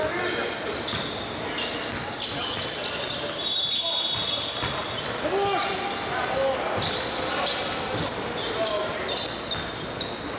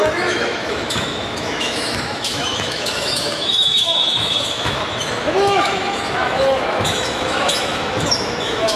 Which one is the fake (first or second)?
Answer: second